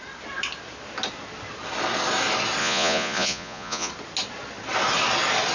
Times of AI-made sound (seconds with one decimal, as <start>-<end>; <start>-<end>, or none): 2.6-3.9